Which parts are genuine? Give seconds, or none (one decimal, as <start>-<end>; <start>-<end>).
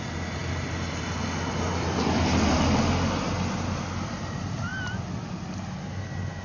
0.0-6.4